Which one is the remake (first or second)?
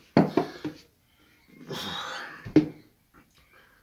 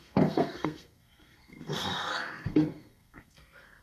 second